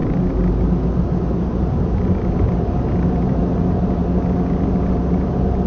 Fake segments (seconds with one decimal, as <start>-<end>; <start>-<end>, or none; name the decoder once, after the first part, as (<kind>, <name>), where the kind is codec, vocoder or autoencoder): none